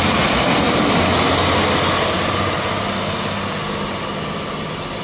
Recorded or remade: recorded